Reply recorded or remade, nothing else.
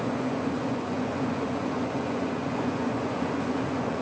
remade